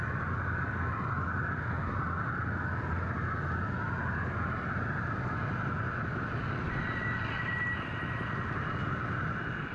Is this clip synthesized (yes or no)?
no